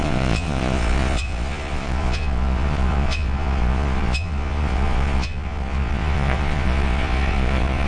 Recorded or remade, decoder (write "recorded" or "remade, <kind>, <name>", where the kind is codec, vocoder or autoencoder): remade, vocoder, Vocos